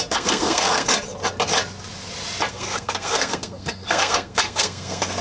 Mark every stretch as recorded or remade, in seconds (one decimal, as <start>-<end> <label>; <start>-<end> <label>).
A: 0.0-0.9 remade; 0.9-2.5 recorded; 2.5-5.2 remade